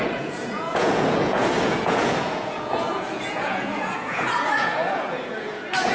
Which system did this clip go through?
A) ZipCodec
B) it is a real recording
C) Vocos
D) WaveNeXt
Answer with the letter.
C